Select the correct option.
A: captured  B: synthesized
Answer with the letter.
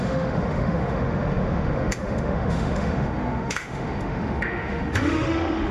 B